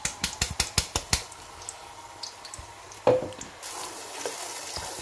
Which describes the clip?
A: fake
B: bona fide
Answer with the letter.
B